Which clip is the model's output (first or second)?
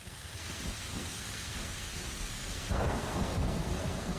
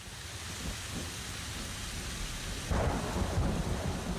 first